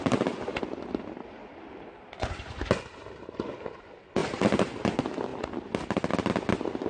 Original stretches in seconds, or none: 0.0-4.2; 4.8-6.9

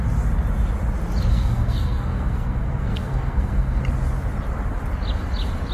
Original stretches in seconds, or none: 0.0-1.3; 3.8-5.7

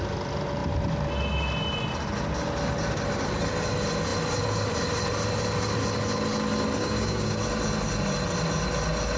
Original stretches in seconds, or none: 0.0-6.8; 7.4-9.2

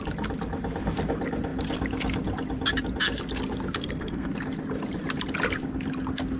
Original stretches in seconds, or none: 0.0-3.8; 4.3-6.4

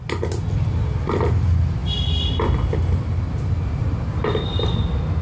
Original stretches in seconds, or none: 0.0-5.2